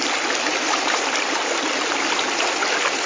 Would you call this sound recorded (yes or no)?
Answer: yes